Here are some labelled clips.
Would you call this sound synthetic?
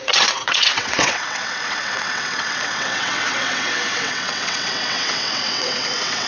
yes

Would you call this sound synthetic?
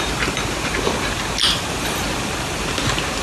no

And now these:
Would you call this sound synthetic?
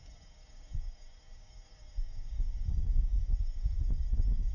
yes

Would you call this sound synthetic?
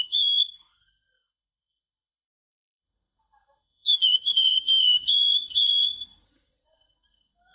yes